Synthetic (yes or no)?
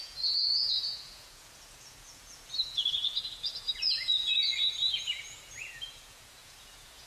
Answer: yes